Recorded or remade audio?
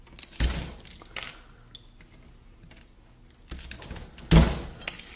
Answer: recorded